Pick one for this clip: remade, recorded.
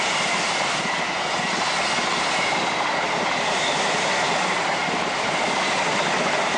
recorded